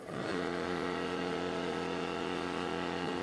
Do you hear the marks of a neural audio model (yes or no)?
yes